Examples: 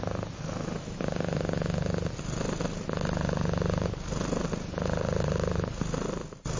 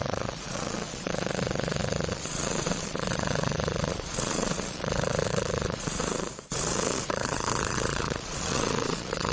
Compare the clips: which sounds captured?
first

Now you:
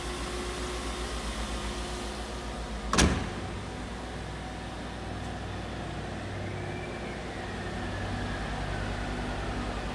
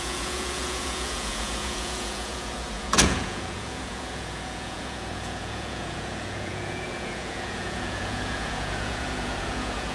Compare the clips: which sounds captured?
first